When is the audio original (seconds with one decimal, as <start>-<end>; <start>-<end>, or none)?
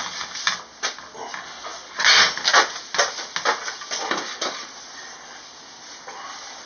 0.0-6.7